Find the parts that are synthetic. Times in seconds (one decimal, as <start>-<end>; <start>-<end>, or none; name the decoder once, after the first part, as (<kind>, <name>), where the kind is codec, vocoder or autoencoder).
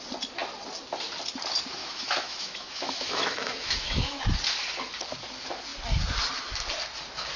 1.8-4.2 (autoencoder, DAC-VAE)